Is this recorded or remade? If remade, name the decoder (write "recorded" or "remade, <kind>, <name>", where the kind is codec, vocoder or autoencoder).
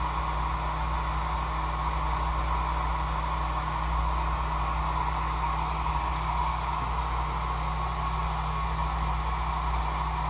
recorded